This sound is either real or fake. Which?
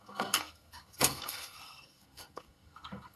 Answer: fake